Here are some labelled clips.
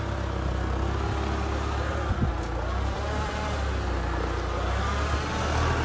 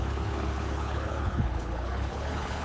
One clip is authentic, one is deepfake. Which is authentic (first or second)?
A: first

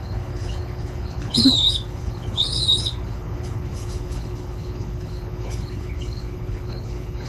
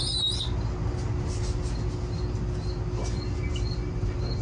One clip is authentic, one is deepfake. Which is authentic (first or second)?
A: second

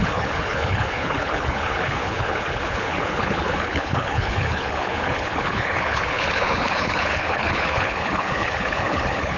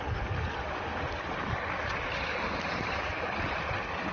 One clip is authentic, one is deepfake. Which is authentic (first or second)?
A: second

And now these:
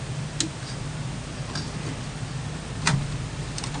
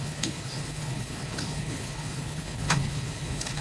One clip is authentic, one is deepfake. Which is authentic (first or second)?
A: first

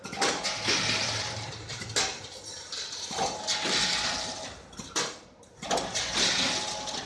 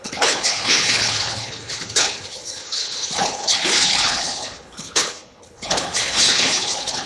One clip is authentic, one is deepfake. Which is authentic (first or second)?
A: first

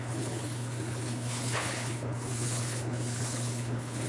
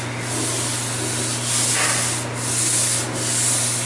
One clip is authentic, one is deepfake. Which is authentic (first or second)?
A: second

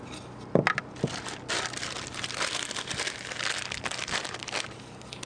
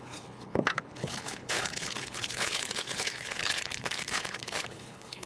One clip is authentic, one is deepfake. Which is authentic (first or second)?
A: first